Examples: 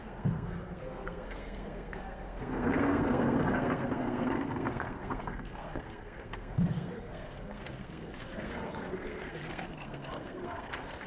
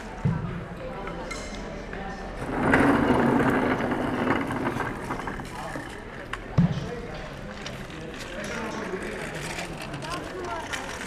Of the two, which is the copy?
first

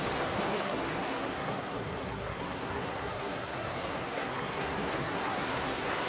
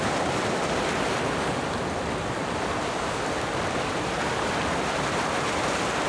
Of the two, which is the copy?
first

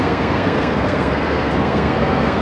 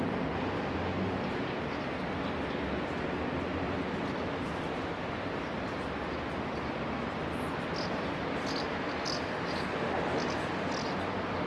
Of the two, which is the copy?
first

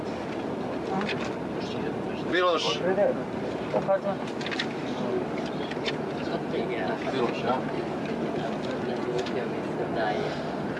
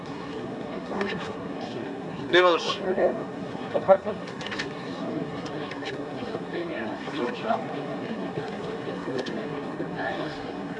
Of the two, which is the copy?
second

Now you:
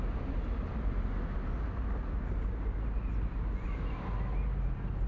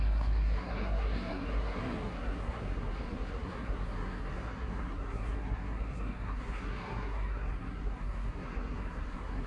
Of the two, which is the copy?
second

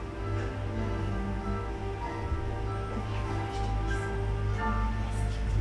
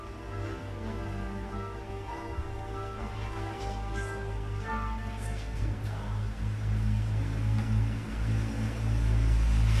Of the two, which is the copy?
second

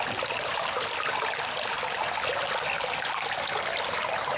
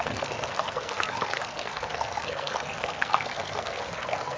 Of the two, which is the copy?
second